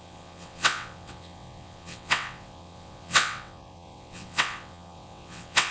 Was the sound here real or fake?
fake